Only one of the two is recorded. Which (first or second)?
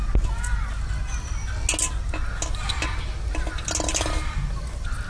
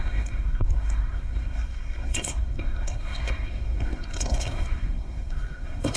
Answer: first